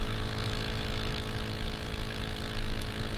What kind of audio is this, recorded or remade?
remade